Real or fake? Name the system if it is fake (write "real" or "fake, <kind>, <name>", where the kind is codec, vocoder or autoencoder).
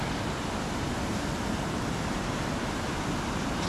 real